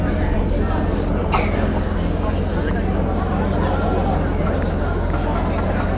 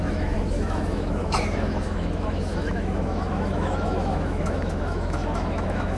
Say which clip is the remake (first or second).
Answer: second